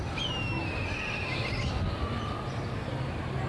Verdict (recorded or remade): recorded